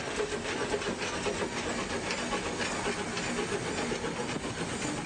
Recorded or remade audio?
recorded